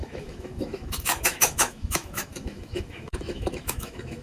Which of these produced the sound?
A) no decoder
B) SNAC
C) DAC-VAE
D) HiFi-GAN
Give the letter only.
C